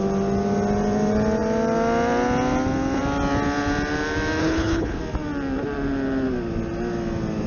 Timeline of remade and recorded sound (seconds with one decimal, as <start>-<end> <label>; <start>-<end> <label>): 0.0-4.4 recorded; 4.4-5.0 remade; 5.0-7.5 recorded